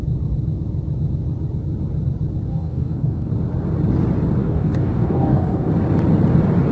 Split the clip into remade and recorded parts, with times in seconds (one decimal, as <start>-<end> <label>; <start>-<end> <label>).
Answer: 0.0-2.5 recorded; 2.5-3.3 remade; 3.3-4.4 recorded; 4.4-5.7 remade; 5.7-6.7 recorded